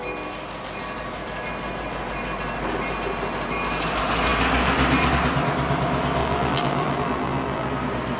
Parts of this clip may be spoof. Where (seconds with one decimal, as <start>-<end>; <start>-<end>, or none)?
6.2-7.7